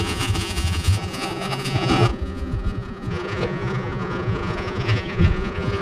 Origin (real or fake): fake